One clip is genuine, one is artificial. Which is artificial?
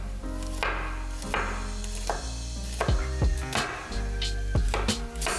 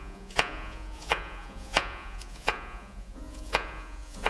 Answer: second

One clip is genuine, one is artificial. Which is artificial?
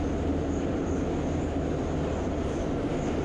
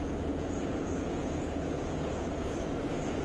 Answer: second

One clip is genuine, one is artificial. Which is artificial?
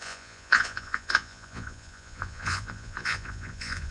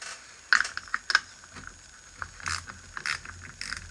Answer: first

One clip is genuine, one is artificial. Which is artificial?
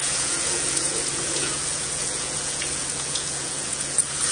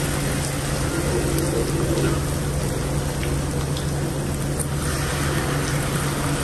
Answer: first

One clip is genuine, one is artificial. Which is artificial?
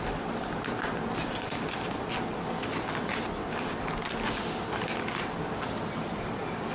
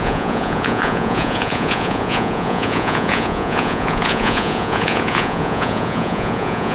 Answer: second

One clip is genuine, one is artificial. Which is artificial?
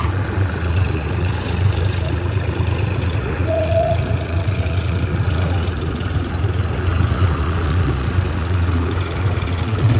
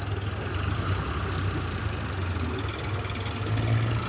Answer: first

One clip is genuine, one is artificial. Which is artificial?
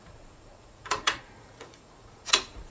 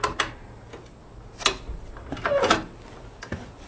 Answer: first